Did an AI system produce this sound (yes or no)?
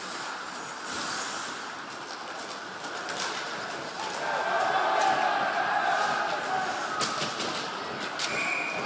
no